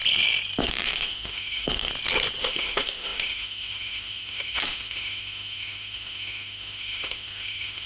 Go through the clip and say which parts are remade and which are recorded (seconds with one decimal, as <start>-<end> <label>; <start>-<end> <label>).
0.0-0.6 recorded; 0.6-1.9 remade; 1.9-2.4 recorded; 2.4-7.9 remade